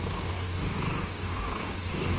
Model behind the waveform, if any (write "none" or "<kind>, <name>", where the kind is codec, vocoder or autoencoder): codec, DAC